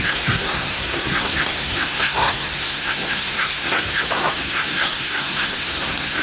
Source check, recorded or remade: remade